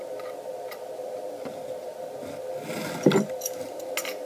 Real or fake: real